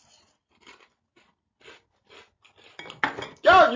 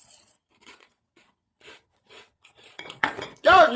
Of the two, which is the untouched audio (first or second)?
first